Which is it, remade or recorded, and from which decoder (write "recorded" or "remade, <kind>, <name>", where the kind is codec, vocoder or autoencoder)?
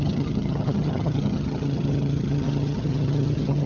remade, vocoder, HiFi-GAN